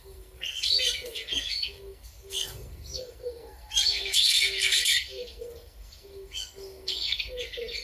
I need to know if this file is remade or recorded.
remade